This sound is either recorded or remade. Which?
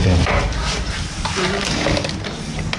recorded